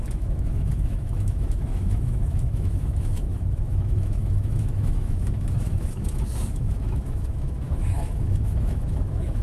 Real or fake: fake